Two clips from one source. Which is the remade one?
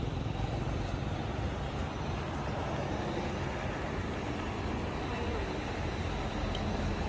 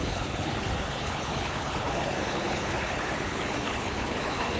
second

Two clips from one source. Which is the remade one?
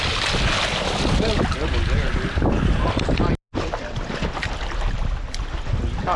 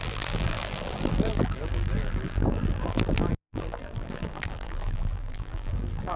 second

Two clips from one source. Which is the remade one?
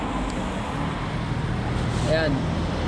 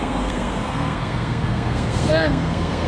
second